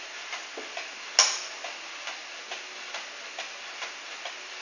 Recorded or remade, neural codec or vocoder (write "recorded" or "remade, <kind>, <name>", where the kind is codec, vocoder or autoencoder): recorded